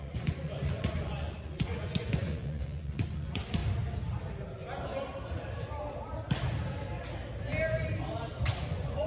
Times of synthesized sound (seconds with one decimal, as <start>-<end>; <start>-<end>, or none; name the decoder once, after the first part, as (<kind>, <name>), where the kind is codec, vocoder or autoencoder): 0.0-3.6 (vocoder, Vocos); 8.3-9.1